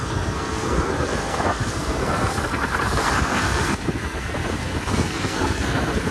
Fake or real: fake